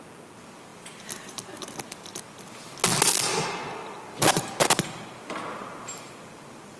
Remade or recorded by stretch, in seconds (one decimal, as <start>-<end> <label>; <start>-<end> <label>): 0.0-6.8 recorded